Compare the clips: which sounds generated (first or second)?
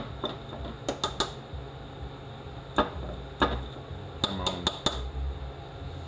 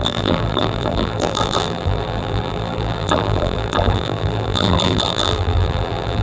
second